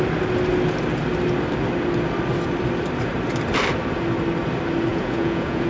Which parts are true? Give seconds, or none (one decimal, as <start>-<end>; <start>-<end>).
0.0-4.9